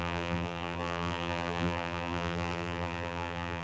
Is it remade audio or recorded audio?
remade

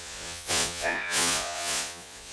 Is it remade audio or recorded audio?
remade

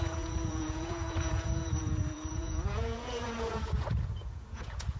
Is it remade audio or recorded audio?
remade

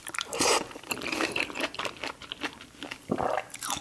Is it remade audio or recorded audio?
remade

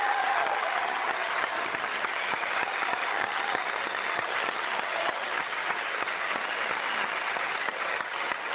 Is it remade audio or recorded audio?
remade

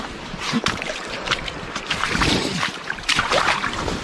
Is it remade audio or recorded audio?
remade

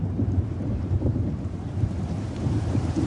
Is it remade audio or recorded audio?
remade